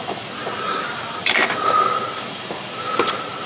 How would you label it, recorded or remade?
recorded